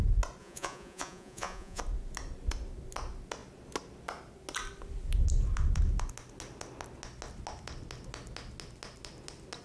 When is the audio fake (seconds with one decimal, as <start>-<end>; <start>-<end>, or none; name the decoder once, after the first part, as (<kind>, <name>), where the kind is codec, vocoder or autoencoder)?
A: 0.4-1.8 (vocoder, Vocos)